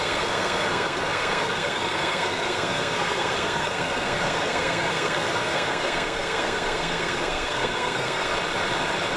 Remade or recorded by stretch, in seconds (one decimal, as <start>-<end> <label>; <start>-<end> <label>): 0.0-8.3 remade; 8.3-9.2 recorded